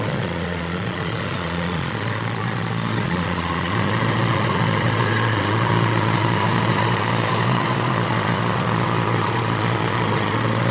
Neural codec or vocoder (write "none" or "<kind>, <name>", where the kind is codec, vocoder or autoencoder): vocoder, Vocos